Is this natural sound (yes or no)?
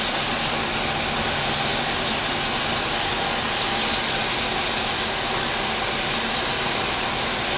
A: yes